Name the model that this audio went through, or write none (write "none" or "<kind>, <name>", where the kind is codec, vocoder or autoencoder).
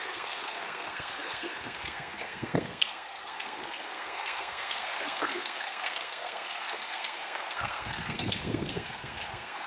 codec, SNAC